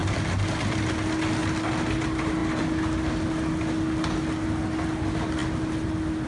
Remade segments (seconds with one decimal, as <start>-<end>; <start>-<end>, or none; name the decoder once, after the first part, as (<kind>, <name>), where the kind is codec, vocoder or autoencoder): none